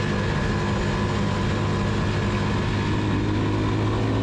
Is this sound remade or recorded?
recorded